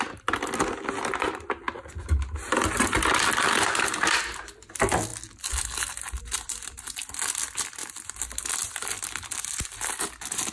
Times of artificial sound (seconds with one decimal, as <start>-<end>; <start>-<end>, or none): none